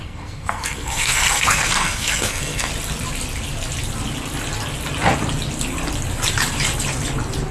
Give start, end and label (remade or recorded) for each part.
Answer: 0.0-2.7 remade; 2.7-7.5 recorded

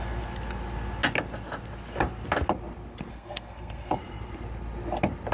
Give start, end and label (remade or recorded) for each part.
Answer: 0.0-3.1 recorded; 3.1-4.0 remade; 4.0-5.3 recorded

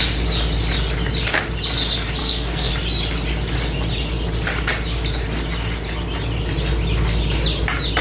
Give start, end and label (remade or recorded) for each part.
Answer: 0.0-2.2 recorded; 2.2-2.7 remade; 2.7-8.0 recorded

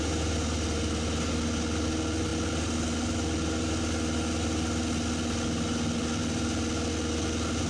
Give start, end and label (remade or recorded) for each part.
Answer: 0.0-7.7 recorded

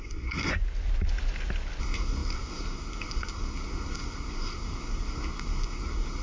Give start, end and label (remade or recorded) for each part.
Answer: 0.0-0.5 remade; 0.5-1.8 recorded; 1.8-6.2 remade

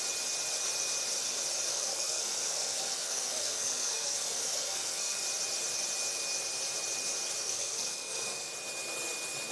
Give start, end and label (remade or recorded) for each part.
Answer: 0.0-1.7 recorded; 1.7-5.2 remade; 5.2-7.4 recorded; 7.4-8.5 remade; 8.5-9.5 recorded

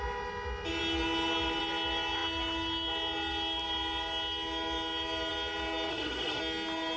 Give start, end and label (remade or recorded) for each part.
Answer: 0.0-5.9 recorded; 5.9-6.4 remade; 6.4-7.0 recorded